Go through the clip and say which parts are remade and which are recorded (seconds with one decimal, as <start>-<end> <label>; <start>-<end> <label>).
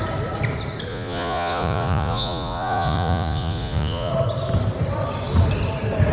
0.0-0.9 recorded; 0.9-4.1 remade; 4.1-6.1 recorded